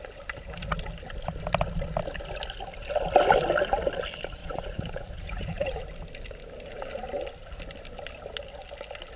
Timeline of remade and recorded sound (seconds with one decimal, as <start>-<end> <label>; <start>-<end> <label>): 0.0-4.4 recorded; 4.4-5.8 remade; 5.8-9.2 recorded